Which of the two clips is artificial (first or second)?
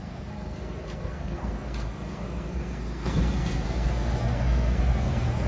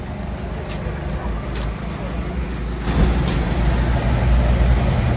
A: first